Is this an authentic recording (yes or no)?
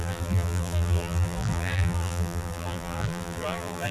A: no